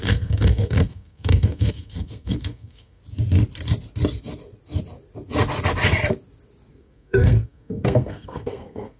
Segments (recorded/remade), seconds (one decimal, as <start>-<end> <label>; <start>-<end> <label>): 0.0-3.0 remade; 3.0-6.7 recorded; 6.7-9.0 remade